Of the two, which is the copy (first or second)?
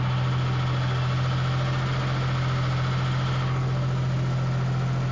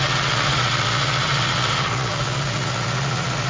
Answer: second